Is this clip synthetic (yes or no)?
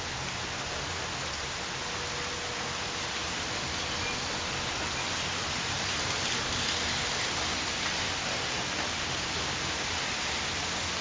no